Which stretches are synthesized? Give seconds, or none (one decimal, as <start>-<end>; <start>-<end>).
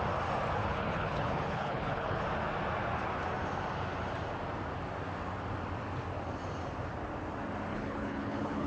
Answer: 0.6-2.2; 7.7-8.7